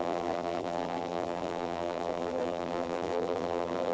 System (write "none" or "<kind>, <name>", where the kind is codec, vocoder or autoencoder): vocoder, BigVGAN v2